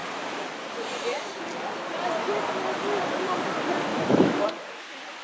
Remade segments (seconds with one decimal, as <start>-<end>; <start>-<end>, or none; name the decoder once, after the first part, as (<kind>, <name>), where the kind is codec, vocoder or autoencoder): 3.9-4.8 (autoencoder, DAC-VAE)